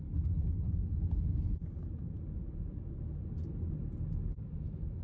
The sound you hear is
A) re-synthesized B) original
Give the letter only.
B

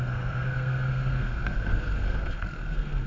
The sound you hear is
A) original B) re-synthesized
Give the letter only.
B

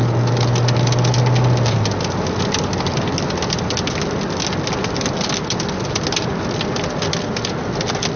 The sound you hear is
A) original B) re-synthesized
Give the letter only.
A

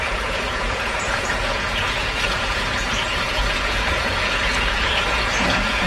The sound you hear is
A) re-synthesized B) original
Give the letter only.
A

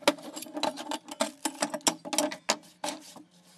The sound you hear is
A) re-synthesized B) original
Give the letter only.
B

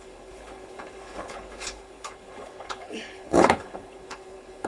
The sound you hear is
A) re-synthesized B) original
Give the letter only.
A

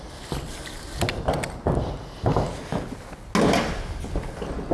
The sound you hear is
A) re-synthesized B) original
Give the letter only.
B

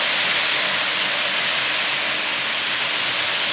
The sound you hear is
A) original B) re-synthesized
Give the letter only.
A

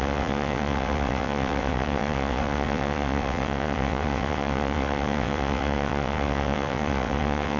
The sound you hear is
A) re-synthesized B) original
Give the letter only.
A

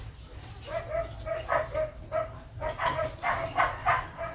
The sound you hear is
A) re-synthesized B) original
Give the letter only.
B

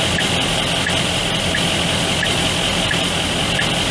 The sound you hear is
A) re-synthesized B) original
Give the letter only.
B